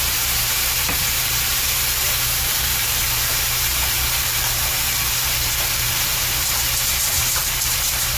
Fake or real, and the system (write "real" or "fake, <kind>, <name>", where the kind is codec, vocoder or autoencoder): fake, vocoder, BigVGAN v2